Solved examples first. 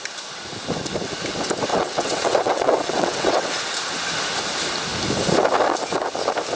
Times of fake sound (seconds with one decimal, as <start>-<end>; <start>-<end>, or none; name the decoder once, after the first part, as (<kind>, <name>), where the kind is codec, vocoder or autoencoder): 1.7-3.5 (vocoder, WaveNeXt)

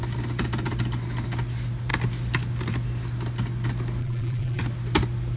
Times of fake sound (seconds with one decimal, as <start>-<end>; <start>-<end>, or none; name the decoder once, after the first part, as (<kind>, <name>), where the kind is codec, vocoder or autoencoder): 4.0-4.6 (vocoder, BigVGAN v2)

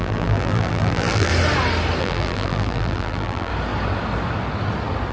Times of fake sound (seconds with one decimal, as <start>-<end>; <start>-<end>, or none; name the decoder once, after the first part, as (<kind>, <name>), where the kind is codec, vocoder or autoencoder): 0.0-1.3 (vocoder, BigVGAN v2); 2.0-3.5

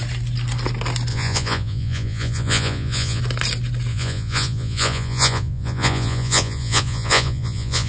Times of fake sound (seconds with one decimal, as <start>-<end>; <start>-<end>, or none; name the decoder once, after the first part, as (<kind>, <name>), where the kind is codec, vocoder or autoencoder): 1.1-3.2 (vocoder, Vocos); 3.9-7.9

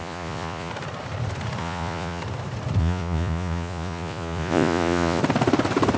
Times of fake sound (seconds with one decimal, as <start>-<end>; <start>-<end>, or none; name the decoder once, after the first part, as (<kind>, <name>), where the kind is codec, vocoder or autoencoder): 0.0-0.7 (vocoder, Vocos); 1.6-2.2; 2.8-5.2

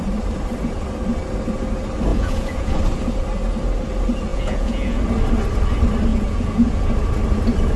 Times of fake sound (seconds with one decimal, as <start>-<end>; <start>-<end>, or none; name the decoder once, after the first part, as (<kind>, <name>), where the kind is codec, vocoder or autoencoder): 2.1-2.8 (vocoder, Vocos); 4.3-5.0; 6.1-6.9